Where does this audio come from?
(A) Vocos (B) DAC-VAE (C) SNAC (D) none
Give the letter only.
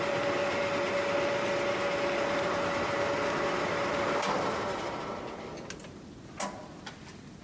D